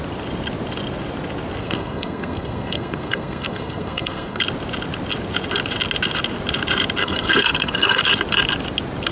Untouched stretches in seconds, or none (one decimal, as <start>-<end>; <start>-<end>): 0.0-1.6; 4.4-7.0; 8.0-9.1